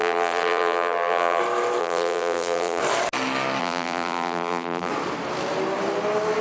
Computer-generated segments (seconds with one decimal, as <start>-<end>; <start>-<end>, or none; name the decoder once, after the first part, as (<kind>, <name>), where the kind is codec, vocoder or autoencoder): 0.0-1.4 (vocoder, BigVGAN v2); 1.8-2.8; 3.6-4.9